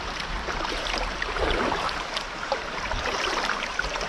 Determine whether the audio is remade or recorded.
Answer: remade